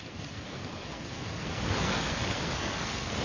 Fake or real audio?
fake